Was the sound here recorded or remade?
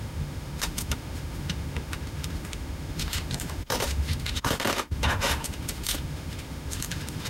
remade